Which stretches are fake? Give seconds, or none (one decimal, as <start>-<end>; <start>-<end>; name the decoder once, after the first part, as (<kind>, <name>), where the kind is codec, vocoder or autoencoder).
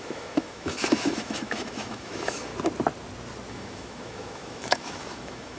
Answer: 0.0-2.5 (autoencoder, DAC-VAE); 3.5-5.6